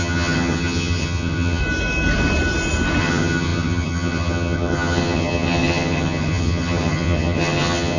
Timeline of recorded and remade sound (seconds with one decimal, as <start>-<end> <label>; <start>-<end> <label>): 0.0-1.6 remade; 1.6-3.0 recorded; 3.0-8.0 remade